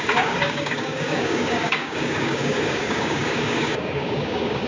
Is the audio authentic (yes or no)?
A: no